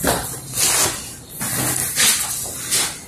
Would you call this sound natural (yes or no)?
yes